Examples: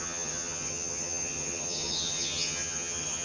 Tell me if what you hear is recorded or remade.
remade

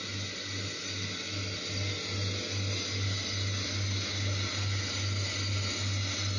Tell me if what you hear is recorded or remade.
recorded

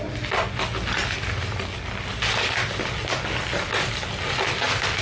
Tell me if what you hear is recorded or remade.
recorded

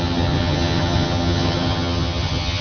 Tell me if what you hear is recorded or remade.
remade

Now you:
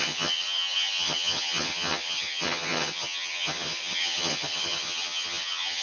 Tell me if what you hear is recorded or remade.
remade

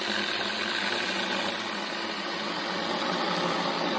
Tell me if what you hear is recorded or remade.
recorded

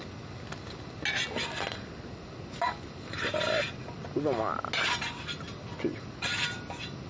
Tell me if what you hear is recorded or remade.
recorded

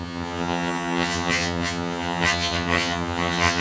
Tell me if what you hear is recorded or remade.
remade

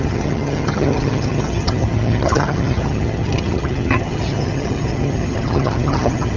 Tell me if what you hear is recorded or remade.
remade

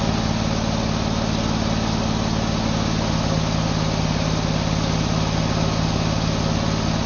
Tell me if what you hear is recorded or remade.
recorded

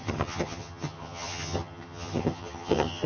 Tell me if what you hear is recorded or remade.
remade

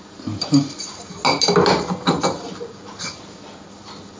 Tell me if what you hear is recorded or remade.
recorded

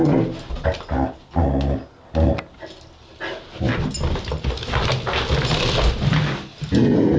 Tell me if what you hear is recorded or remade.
recorded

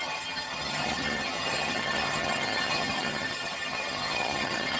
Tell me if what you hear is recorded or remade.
remade